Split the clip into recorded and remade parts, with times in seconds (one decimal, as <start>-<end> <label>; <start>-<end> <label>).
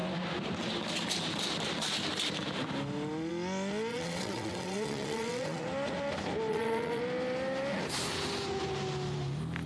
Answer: 0.0-3.9 recorded; 3.9-5.6 remade; 5.6-6.5 recorded; 6.5-7.0 remade; 7.0-9.7 recorded